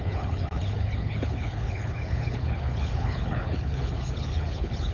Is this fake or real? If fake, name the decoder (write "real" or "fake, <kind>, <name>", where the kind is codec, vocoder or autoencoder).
fake, codec, HILCodec